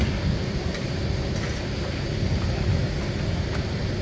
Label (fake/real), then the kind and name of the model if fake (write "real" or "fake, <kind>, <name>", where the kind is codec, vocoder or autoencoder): real